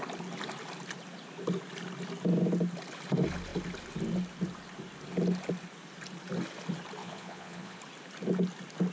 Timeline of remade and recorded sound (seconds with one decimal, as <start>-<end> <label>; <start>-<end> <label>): 0.0-7.0 recorded; 7.0-7.8 remade; 7.8-8.9 recorded